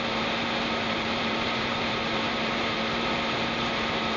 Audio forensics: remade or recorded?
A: remade